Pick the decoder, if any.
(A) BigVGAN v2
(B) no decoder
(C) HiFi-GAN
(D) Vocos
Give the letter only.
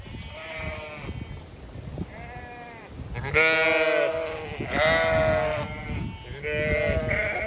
B